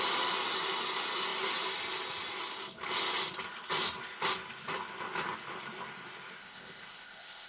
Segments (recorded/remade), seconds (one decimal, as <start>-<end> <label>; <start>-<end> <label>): 0.0-6.4 recorded; 6.4-7.5 remade